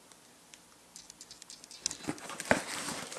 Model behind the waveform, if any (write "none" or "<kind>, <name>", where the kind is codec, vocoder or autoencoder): none